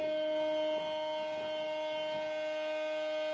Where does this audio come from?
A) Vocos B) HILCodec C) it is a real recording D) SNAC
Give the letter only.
C